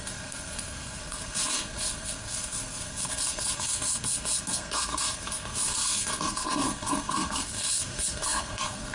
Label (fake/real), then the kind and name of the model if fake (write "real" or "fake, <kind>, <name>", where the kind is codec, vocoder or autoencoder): fake, codec, SNAC